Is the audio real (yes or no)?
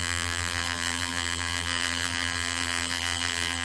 no